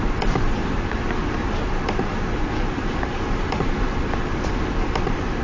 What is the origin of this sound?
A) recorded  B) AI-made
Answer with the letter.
B